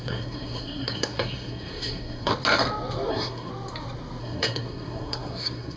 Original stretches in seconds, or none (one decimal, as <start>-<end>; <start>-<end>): 2.3-3.1; 3.5-4.2